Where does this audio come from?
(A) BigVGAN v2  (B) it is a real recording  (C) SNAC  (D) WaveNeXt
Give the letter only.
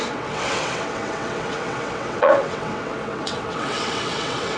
D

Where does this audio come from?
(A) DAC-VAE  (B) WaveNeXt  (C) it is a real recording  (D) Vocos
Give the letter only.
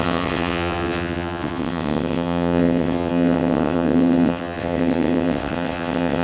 B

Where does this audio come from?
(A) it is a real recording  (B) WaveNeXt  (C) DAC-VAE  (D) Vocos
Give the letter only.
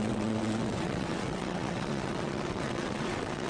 B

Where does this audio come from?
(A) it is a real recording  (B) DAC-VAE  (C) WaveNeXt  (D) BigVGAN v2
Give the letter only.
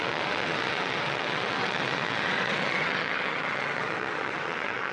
C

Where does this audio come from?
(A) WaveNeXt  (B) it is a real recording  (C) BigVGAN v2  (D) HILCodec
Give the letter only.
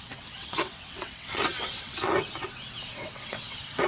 A